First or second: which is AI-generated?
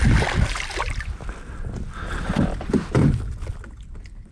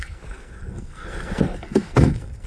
second